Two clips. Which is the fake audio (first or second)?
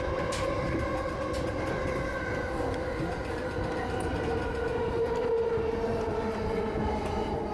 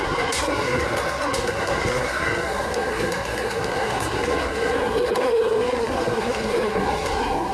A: second